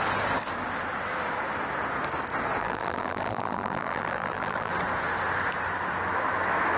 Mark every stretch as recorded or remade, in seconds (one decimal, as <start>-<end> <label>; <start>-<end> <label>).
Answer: 0.0-2.6 recorded; 2.6-4.7 remade; 4.7-6.8 recorded